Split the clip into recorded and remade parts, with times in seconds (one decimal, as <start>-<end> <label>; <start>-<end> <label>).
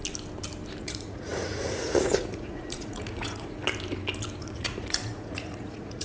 0.0-0.8 recorded; 0.8-3.6 remade; 3.6-4.4 recorded; 4.4-6.0 remade